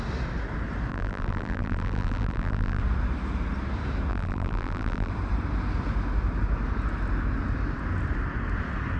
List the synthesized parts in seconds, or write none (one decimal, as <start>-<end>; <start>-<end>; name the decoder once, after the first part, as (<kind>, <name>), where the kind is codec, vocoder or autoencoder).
0.9-2.8 (vocoder, BigVGAN v2); 4.1-5.1